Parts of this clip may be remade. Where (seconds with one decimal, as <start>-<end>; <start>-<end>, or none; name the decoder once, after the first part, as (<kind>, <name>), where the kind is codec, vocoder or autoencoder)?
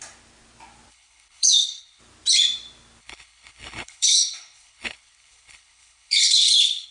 0.9-2.0 (codec, HILCodec); 3.0-6.9